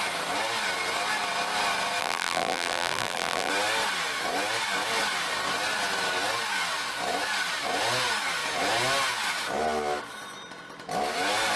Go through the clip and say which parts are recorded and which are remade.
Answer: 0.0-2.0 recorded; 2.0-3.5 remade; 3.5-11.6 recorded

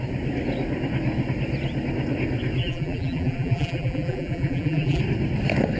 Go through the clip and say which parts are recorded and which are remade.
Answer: 0.0-2.6 recorded; 2.6-5.0 remade; 5.0-5.8 recorded

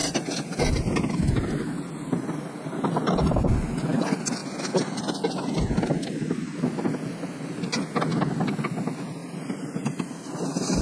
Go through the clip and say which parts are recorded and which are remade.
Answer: 0.0-0.8 remade; 0.8-4.4 recorded; 4.4-5.0 remade; 5.0-9.2 recorded; 9.2-10.8 remade

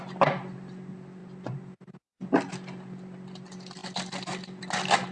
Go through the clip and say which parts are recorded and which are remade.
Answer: 0.0-5.1 recorded

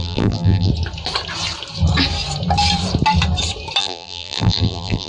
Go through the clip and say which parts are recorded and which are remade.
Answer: 0.0-0.7 remade; 0.7-3.8 recorded; 3.8-5.1 remade

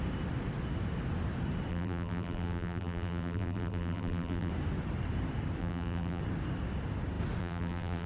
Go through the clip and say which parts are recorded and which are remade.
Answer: 0.0-1.7 recorded; 1.7-4.5 remade; 4.5-5.6 recorded; 5.6-6.2 remade; 6.2-7.4 recorded; 7.4-8.1 remade